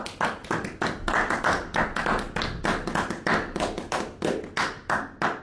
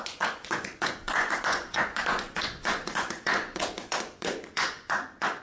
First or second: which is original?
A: first